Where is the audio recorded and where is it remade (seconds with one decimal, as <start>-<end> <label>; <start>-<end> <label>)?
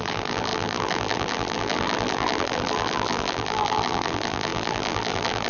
0.0-5.5 remade